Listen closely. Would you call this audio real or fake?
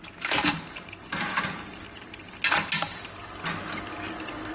real